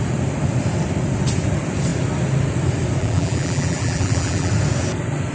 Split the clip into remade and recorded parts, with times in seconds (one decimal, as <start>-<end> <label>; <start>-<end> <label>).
0.0-3.0 recorded; 3.0-4.5 remade; 4.5-5.3 recorded